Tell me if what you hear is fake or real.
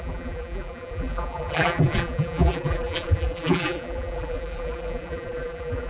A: fake